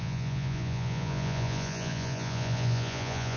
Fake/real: fake